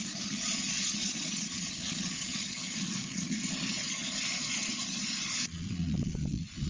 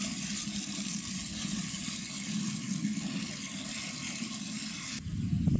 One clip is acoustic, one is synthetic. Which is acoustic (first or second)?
second